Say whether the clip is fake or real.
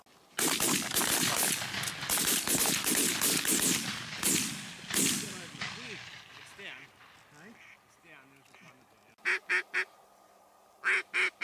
real